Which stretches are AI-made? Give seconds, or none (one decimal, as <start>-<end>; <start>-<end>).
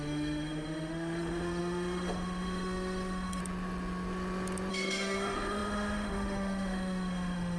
0.0-3.4; 4.7-7.6